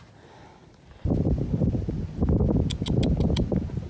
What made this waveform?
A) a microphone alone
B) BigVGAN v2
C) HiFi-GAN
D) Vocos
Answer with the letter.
A